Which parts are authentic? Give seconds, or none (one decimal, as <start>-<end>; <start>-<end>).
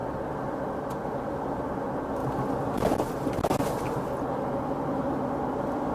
0.0-5.9